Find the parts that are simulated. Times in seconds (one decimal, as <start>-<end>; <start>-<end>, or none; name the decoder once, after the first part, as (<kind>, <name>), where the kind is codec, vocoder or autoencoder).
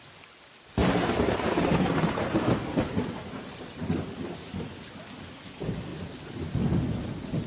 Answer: 0.8-4.9 (vocoder, BigVGAN v2)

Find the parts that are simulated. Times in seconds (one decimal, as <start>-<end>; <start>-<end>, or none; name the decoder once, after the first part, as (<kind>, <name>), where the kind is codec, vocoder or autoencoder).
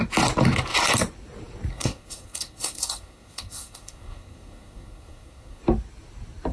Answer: 1.7-5.6 (codec, SNAC)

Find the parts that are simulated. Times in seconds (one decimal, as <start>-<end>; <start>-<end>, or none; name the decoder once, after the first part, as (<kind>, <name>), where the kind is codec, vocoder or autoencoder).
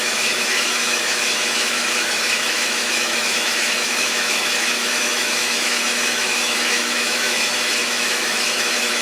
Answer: 0.0-9.0 (autoencoder, DAC-VAE)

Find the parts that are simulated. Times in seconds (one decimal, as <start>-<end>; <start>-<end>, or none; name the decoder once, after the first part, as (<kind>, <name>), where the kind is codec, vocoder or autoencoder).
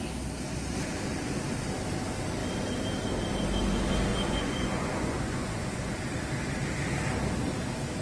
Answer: 4.1-6.1 (vocoder, Vocos)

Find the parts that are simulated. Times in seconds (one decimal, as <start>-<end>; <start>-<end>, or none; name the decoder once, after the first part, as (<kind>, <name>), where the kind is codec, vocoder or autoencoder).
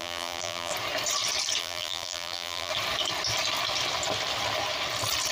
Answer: 0.0-0.7 (vocoder, BigVGAN v2); 1.6-2.7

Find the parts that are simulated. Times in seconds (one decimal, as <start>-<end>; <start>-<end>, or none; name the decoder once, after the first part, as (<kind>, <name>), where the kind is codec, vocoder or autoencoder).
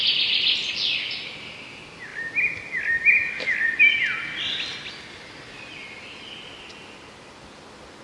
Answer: none